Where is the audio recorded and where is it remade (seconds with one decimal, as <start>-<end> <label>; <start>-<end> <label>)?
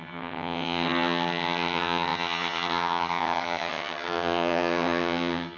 0.0-5.6 remade